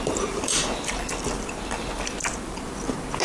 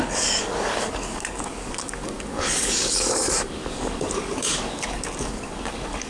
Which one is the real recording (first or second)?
first